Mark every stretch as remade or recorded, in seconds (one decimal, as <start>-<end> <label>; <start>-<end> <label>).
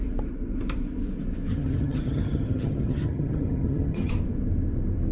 0.0-1.5 recorded; 1.5-4.1 remade; 4.1-5.1 recorded